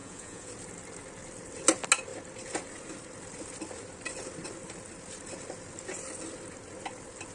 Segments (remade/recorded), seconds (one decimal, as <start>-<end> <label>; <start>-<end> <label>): 0.0-0.5 remade; 0.5-7.3 recorded